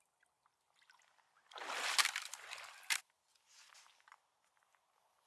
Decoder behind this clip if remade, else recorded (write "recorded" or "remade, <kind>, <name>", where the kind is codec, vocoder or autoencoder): recorded